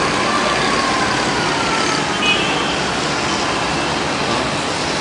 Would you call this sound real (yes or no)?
yes